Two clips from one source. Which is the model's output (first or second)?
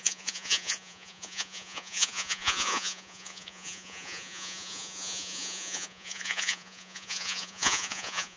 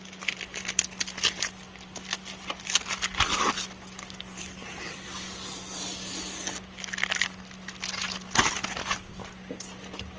first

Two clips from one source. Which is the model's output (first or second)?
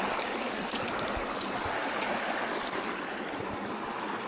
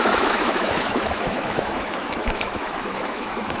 second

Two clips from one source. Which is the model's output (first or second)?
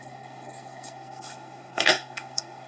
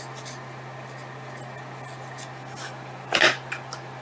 first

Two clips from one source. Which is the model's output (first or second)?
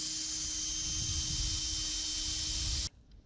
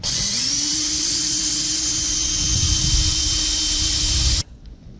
second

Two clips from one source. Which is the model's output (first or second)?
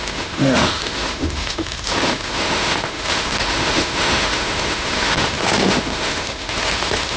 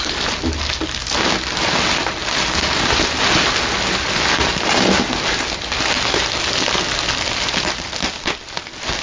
first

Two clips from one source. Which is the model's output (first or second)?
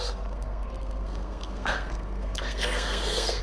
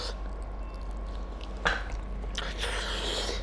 first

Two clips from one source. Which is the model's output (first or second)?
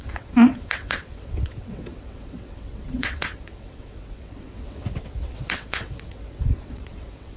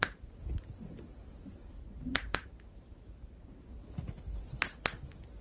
first